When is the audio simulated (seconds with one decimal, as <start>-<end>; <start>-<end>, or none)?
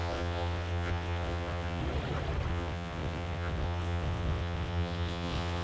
0.0-1.8; 2.5-5.6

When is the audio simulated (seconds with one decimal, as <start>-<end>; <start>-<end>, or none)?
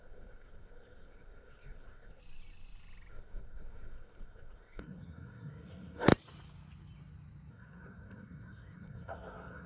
0.0-2.2; 3.1-6.1; 7.5-9.7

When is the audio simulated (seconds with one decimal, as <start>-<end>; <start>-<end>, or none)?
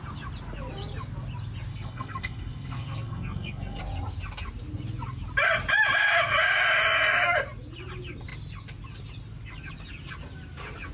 1.7-3.8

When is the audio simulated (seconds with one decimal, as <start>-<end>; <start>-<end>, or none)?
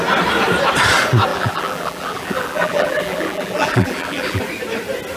1.3-4.4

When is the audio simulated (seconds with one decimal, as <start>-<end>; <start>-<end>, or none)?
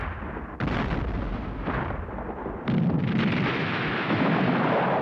3.6-4.3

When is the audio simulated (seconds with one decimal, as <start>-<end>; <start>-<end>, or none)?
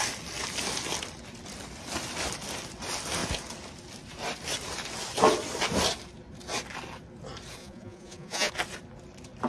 7.6-8.5